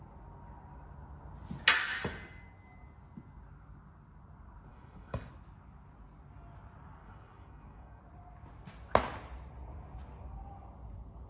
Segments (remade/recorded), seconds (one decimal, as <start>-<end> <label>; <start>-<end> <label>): 0.0-4.7 recorded; 4.7-5.3 remade; 5.3-7.0 recorded; 7.0-8.0 remade; 8.0-11.3 recorded